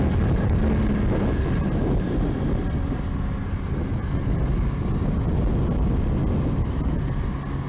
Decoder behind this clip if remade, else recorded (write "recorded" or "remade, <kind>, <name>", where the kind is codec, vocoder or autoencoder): recorded